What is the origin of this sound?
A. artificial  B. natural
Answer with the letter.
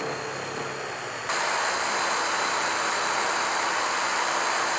B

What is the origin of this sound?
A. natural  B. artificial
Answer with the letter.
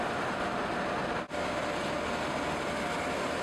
A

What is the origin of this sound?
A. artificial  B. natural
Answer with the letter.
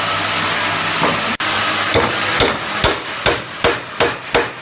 B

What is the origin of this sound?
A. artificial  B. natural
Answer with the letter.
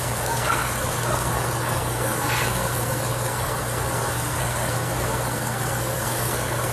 A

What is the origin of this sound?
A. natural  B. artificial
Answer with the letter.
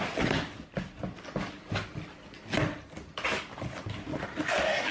A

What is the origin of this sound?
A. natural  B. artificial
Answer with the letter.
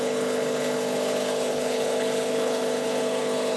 B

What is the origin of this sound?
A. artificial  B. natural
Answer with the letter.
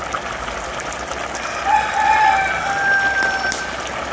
B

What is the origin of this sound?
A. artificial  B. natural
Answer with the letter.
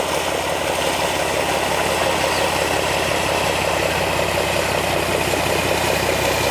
B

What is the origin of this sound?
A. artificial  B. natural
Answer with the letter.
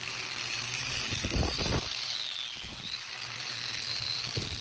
B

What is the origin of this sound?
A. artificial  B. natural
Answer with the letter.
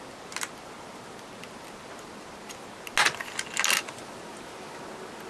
B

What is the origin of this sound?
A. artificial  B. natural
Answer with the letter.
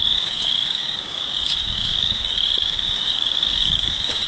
A